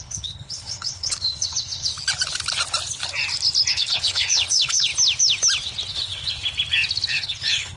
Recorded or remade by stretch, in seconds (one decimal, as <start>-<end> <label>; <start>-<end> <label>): 0.0-1.9 remade; 1.9-3.7 recorded; 3.7-4.9 remade; 4.9-5.9 recorded; 5.9-6.4 remade; 6.4-7.1 recorded; 7.1-7.8 remade